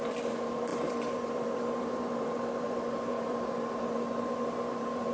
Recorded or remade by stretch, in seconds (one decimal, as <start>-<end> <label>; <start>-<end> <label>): 0.0-5.1 remade